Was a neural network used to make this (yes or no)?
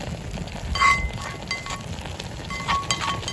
no